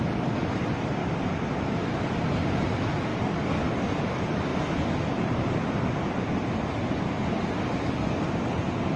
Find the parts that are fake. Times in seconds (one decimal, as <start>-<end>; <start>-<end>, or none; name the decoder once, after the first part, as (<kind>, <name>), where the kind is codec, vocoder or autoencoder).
none